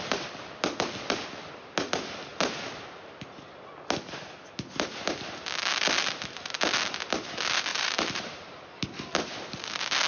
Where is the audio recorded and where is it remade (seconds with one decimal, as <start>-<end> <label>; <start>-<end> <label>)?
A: 0.0-7.7 recorded; 7.7-9.7 remade; 9.7-10.1 recorded

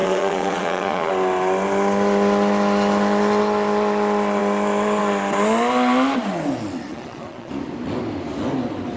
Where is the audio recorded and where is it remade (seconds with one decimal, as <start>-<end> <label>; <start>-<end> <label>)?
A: 0.0-1.1 remade; 1.1-6.9 recorded; 6.9-7.5 remade; 7.5-9.0 recorded

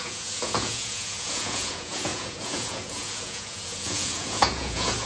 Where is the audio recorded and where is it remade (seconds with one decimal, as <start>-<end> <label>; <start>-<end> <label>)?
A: 0.0-5.1 remade

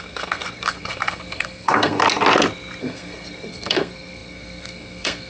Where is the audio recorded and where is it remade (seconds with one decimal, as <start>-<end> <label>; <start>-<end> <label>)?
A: 0.0-2.0 remade; 2.0-2.8 recorded; 2.8-5.3 remade

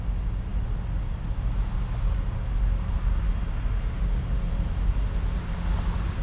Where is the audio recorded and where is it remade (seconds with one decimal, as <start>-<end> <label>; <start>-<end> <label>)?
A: 0.0-6.2 recorded